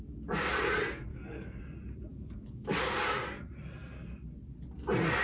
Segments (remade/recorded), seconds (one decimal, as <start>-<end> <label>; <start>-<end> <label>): 0.0-1.1 recorded; 1.1-1.6 remade; 1.6-2.1 recorded; 2.1-3.0 remade; 3.0-5.2 recorded